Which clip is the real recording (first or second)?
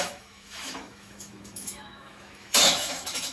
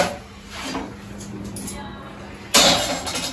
second